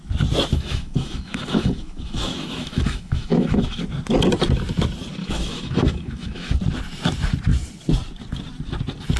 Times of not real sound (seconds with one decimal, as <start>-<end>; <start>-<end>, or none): 0.5-3.8; 5.2-6.6